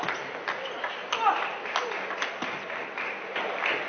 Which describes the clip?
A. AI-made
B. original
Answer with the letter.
B